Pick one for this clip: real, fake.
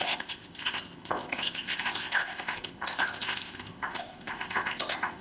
fake